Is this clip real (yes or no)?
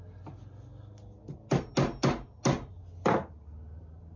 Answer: yes